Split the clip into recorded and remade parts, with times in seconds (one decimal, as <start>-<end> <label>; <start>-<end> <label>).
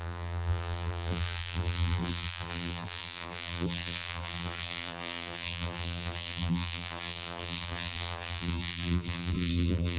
0.0-10.0 remade